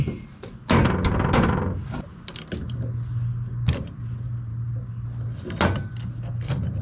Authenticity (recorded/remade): recorded